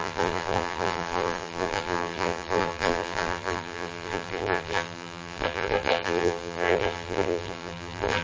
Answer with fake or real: fake